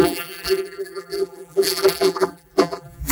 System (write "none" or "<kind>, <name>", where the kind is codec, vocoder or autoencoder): vocoder, BigVGAN v2